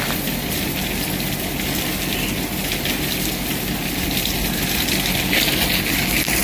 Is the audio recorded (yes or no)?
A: yes